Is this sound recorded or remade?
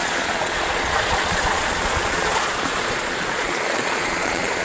remade